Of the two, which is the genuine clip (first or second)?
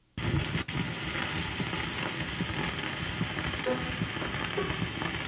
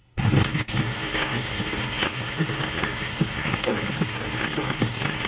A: first